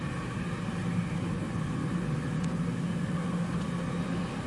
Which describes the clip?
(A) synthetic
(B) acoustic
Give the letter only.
B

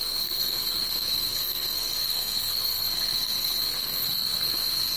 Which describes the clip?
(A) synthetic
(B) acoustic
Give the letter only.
A